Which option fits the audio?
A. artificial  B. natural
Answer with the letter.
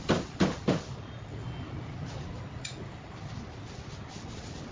B